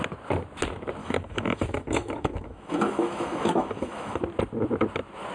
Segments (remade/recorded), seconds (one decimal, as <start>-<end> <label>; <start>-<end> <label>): 0.0-1.0 recorded; 1.0-4.2 remade; 4.2-5.3 recorded